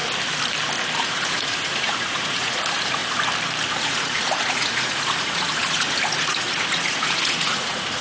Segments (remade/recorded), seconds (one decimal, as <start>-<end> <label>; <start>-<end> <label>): 0.0-1.0 recorded; 1.0-3.0 remade; 3.0-3.8 recorded; 3.8-8.0 remade